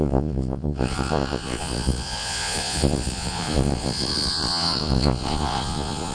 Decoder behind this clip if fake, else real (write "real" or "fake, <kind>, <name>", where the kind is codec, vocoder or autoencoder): fake, vocoder, Vocos